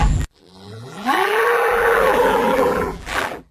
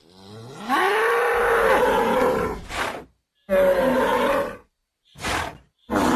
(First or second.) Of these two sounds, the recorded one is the second